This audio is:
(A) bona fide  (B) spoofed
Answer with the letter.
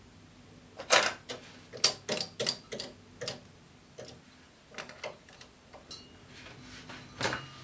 A